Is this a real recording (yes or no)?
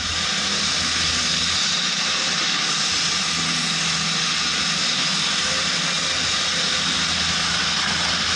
yes